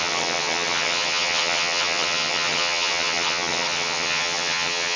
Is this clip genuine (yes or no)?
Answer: no